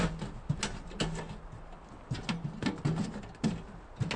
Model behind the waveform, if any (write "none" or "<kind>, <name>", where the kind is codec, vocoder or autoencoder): none